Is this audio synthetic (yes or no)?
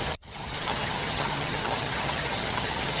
yes